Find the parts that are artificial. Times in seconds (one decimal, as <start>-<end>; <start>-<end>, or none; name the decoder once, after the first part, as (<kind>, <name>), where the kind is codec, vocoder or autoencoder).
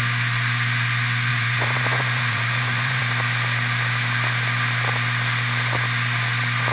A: 1.3-3.0 (vocoder, Vocos)